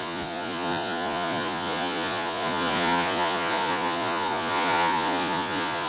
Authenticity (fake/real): fake